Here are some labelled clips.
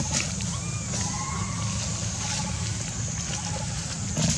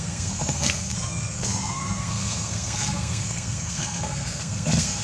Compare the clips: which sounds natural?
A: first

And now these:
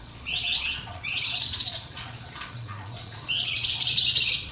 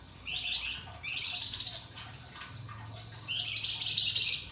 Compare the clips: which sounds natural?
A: second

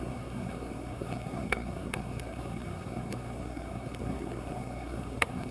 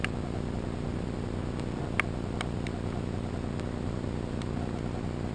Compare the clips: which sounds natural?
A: second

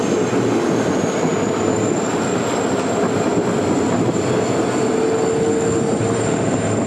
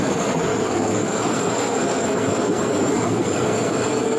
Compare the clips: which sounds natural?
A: first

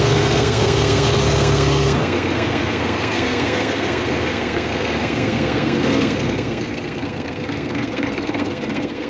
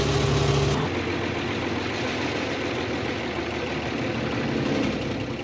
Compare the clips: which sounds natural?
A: second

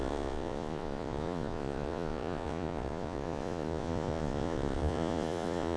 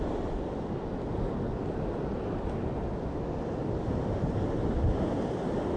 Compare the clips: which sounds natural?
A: second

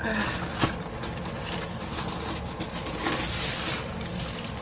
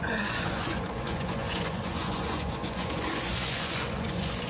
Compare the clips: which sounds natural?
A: first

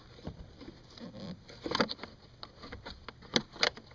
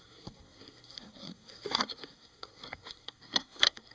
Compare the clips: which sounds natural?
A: first